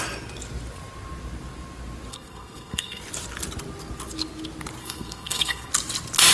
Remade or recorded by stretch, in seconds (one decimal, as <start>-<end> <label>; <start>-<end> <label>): 0.0-2.1 recorded; 2.1-3.0 remade; 3.0-4.8 recorded; 4.8-5.7 remade; 5.7-6.3 recorded